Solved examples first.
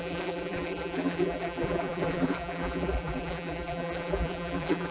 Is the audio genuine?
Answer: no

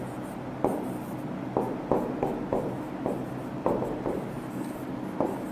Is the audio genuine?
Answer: yes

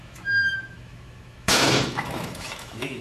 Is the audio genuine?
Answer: no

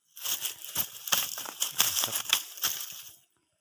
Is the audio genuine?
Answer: yes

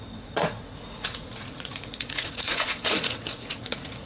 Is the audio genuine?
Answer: no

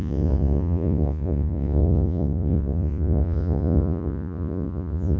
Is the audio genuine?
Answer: no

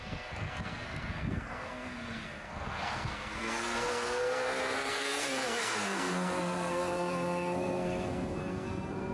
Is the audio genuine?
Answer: no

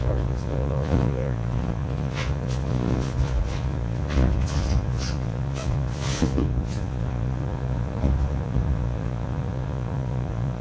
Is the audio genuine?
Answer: no